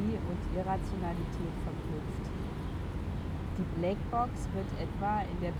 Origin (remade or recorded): recorded